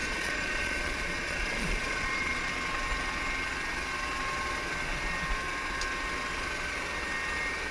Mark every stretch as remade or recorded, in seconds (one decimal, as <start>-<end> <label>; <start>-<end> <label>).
0.0-2.5 remade; 2.5-7.7 recorded